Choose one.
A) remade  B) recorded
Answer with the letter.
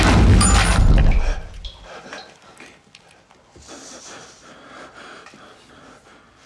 B